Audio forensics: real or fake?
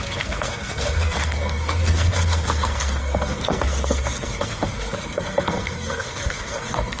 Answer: fake